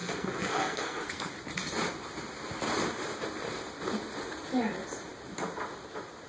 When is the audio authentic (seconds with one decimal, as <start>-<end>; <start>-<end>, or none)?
1.3-6.3